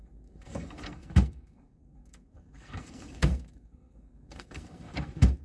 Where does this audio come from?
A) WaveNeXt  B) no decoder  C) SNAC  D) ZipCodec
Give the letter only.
C